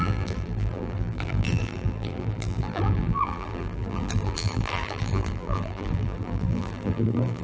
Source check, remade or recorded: remade